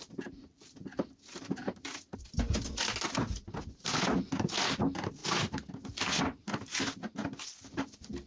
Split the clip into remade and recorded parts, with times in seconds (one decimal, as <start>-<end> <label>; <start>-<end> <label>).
0.0-1.6 remade; 1.6-3.0 recorded; 3.0-5.2 remade; 5.2-7.4 recorded; 7.4-8.3 remade

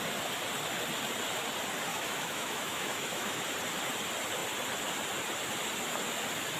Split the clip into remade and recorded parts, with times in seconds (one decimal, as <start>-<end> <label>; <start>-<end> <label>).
0.0-1.9 recorded; 1.9-3.4 remade; 3.4-6.6 recorded

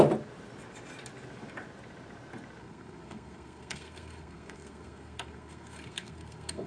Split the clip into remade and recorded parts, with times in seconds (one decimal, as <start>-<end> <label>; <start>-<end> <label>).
0.0-2.6 recorded; 2.6-6.7 remade

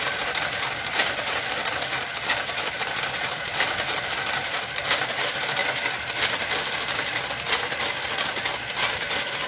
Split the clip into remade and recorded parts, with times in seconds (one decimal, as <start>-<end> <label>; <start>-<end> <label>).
0.0-5.6 remade; 5.6-9.5 recorded

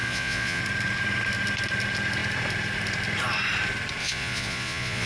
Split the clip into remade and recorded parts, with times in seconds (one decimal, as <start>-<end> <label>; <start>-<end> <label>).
0.0-0.6 remade; 0.6-4.0 recorded; 4.0-5.1 remade